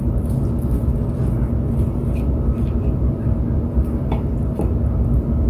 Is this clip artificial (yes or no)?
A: no